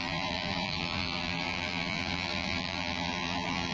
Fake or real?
fake